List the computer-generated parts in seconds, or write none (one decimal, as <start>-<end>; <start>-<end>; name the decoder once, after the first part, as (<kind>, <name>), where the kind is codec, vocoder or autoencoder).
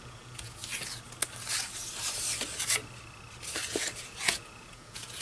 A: 0.0-0.6 (vocoder, Vocos); 3.7-5.2